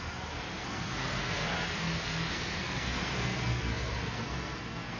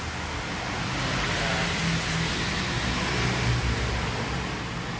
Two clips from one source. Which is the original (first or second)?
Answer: second